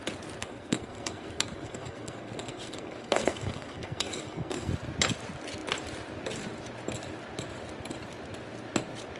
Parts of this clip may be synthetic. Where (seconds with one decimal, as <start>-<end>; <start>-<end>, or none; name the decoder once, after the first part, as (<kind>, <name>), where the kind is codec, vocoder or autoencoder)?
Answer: 0.4-4.7 (codec, SNAC)